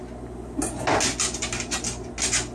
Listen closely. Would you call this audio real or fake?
real